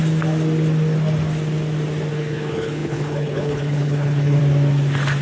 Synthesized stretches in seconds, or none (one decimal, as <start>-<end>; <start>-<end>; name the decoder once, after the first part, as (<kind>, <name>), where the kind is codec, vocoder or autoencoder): 2.1-4.4 (codec, HILCodec)